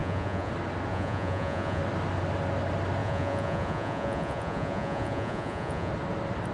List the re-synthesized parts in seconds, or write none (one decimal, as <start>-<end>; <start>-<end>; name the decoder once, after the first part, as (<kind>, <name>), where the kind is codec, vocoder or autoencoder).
0.0-0.5 (vocoder, Vocos); 0.9-1.8; 3.0-5.9